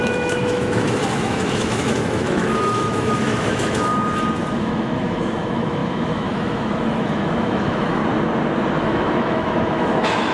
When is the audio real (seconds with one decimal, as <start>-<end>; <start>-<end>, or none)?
3.9-4.6; 8.0-8.8